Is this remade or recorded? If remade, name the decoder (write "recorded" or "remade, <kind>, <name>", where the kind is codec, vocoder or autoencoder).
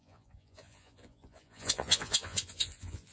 remade, vocoder, Vocos